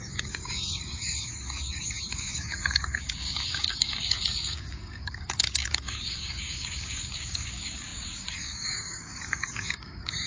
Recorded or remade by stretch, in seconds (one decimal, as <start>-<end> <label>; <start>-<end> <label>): 0.0-10.3 remade